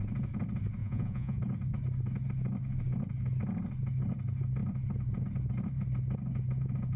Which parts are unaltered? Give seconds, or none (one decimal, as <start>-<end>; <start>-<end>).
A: 0.0-0.8; 1.4-7.0

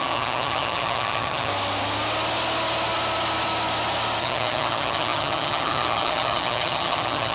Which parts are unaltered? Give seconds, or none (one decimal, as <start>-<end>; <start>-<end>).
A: 1.5-4.2

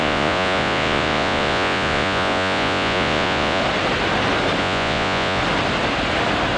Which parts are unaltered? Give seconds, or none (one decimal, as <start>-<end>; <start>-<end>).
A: 3.6-4.6; 5.4-6.6

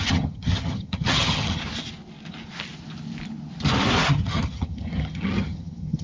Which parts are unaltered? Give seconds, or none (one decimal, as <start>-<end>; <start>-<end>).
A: 1.6-4.1

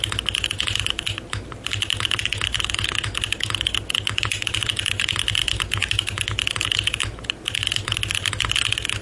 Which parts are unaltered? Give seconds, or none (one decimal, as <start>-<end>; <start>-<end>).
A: 0.0-9.0